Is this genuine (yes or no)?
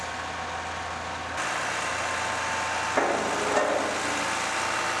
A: yes